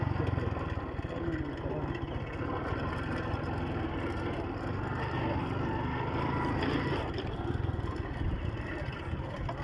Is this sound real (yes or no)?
yes